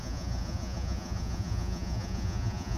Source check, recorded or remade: remade